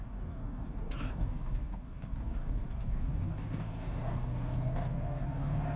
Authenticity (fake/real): fake